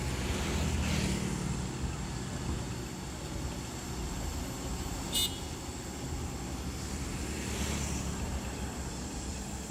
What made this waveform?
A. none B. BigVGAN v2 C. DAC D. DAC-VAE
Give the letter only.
A